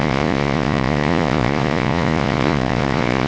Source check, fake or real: fake